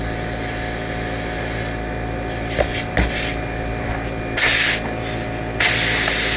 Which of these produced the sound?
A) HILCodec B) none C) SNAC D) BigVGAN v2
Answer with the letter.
B